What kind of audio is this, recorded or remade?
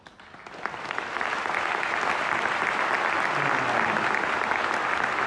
recorded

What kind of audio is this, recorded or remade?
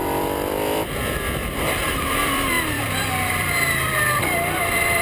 remade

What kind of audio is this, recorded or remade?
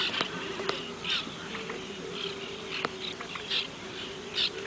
recorded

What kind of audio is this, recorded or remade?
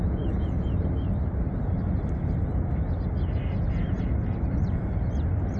recorded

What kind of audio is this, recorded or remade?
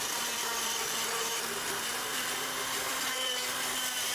remade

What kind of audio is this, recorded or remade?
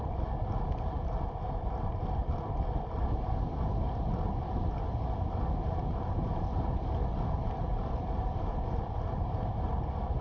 recorded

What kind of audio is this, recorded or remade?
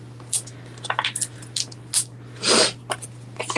recorded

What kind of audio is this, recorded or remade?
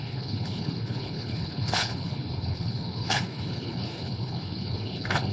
remade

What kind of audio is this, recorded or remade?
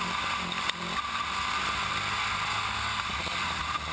recorded